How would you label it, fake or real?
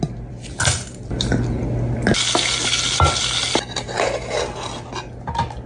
real